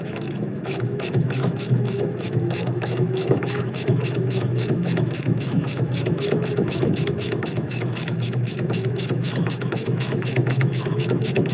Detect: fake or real fake